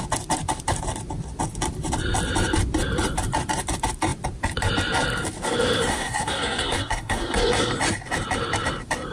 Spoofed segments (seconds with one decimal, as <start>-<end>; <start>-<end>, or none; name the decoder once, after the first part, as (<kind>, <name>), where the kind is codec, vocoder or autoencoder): 5.9-7.7 (codec, SNAC)